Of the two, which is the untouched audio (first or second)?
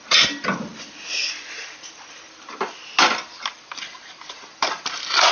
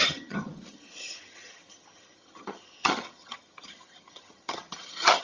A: first